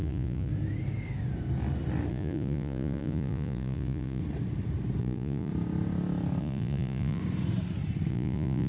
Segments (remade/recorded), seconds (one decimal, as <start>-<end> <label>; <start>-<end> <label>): 0.0-0.5 remade; 0.5-2.1 recorded; 2.1-4.2 remade; 4.2-5.0 recorded; 5.0-5.5 remade; 5.5-6.4 recorded; 6.4-7.2 remade; 7.2-8.1 recorded; 8.1-8.7 remade